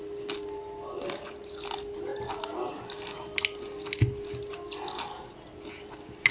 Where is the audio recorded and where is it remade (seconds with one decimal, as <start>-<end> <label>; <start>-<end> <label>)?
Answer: 0.0-6.3 recorded